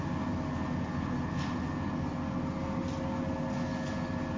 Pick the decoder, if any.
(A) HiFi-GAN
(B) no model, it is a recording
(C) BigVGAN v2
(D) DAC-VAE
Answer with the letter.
B